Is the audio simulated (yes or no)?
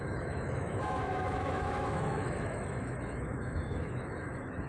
yes